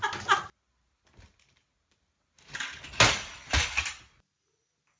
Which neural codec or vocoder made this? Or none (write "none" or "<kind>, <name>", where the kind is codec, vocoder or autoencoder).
none